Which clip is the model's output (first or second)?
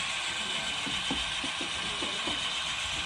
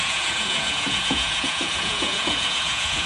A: second